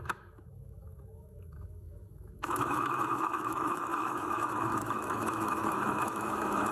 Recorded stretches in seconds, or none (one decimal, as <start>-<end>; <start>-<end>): none